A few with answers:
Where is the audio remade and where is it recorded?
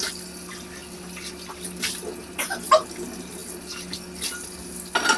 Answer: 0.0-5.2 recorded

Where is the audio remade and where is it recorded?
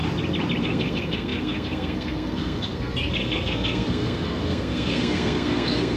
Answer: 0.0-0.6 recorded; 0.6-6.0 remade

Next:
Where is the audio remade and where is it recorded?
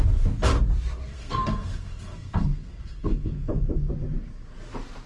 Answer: 0.0-1.1 recorded; 1.1-3.9 remade; 3.9-5.1 recorded